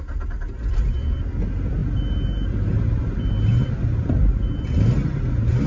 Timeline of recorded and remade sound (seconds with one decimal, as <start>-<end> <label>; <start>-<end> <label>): 0.0-5.7 recorded